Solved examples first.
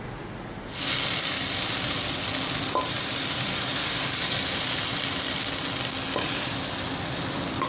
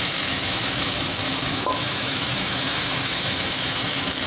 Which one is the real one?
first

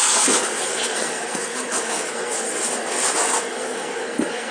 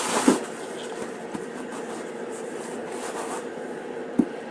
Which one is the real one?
second